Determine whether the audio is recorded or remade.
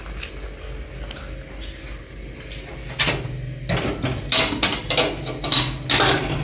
recorded